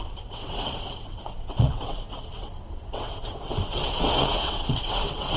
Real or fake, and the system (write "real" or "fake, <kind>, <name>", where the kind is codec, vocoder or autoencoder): fake, vocoder, WaveNeXt